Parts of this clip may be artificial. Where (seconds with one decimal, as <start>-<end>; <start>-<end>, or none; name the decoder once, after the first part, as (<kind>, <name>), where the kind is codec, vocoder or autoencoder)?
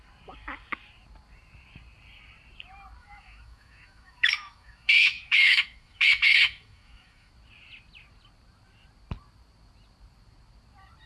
3.0-7.3 (autoencoder, DAC-VAE)